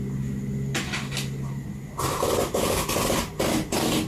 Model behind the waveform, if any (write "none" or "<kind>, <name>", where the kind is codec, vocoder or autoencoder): none